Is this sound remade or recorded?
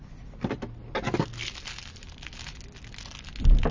recorded